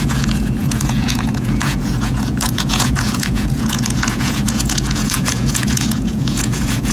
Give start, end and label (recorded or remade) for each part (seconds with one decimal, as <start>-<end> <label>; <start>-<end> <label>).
0.0-6.9 remade